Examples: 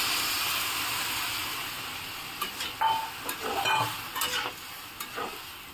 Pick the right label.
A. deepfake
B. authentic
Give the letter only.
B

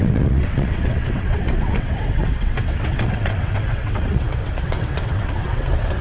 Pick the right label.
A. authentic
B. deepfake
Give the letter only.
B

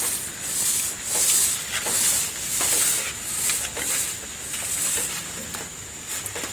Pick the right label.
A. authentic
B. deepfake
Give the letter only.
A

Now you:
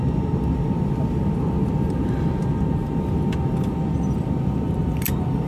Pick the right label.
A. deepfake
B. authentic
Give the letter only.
B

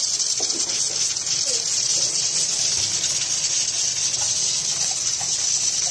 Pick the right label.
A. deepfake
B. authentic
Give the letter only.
B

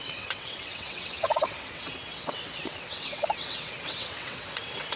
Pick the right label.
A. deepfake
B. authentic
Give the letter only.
A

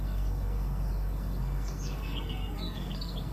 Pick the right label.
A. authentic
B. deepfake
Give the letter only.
B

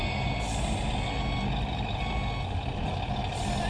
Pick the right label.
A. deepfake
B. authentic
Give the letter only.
B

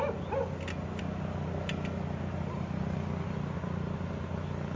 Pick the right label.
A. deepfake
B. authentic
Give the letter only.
B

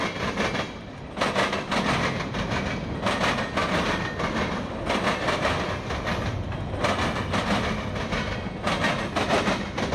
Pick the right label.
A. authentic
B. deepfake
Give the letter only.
A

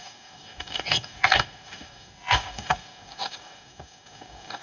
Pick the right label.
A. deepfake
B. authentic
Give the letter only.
A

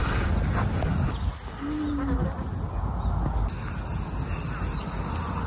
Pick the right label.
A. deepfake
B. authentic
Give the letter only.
B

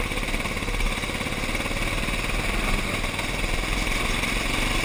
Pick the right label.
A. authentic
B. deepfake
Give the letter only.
A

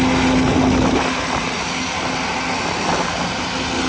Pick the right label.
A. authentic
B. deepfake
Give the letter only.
A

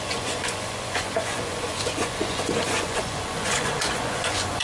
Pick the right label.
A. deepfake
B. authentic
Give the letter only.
A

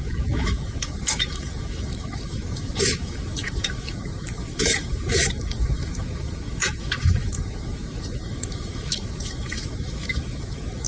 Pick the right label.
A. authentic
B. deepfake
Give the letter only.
B